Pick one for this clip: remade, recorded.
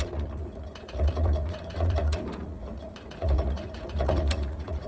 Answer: remade